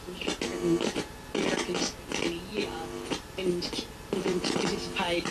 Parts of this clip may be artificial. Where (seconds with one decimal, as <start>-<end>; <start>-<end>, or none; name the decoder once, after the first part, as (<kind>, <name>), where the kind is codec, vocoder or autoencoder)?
2.5-5.3 (vocoder, BigVGAN v2)